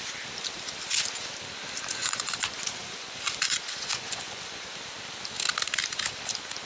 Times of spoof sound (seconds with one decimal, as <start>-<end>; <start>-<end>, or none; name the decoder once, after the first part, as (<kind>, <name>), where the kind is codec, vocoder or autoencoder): 2.0-4.7 (vocoder, Vocos)